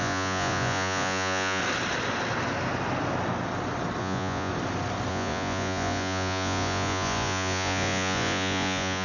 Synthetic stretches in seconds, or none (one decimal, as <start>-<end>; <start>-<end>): 0.0-1.6; 4.0-4.5; 5.1-9.0